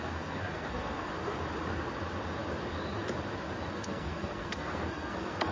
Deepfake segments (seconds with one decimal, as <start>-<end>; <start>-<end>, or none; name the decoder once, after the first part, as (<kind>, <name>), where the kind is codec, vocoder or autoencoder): 0.0-1.1 (codec, SNAC); 3.7-5.5